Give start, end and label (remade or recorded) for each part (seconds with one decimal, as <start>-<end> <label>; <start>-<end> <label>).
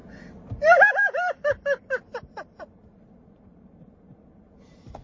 0.0-0.9 recorded; 0.9-5.0 remade